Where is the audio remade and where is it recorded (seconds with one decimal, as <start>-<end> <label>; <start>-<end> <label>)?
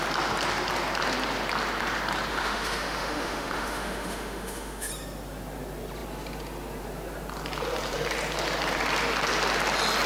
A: 0.0-2.3 recorded; 2.3-4.9 remade; 4.9-10.1 recorded